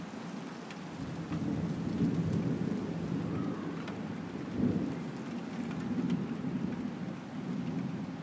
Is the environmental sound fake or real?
real